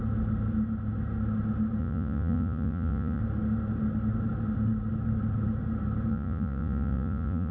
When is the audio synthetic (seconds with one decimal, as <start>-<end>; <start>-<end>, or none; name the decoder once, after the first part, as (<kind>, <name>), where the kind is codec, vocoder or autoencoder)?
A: 1.8-3.2 (vocoder, Vocos); 6.1-7.5